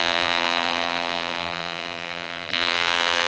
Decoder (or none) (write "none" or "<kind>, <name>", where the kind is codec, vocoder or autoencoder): vocoder, BigVGAN v2